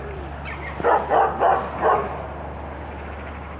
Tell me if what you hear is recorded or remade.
recorded